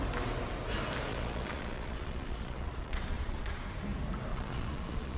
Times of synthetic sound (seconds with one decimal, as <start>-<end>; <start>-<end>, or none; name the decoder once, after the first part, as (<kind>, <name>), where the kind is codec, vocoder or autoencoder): 1.1-3.6 (vocoder, Vocos); 4.3-5.2